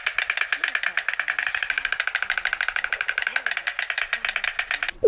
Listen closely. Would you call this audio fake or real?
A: real